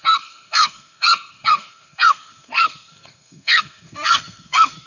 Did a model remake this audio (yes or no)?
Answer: yes